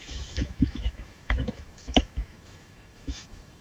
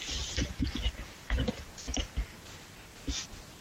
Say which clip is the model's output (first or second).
first